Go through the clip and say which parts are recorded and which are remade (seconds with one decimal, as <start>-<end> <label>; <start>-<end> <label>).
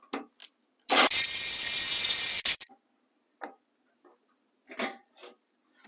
0.0-5.9 recorded